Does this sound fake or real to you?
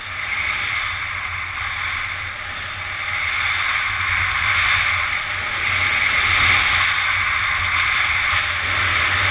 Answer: real